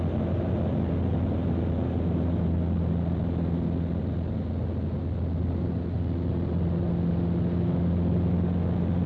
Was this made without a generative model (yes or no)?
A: yes